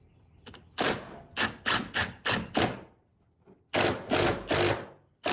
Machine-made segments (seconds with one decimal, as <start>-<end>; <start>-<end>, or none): none